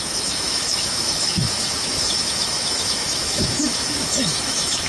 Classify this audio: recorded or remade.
remade